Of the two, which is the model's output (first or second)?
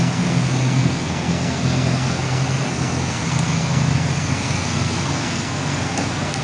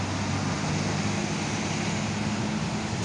first